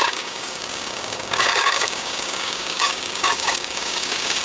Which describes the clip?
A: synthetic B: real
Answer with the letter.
A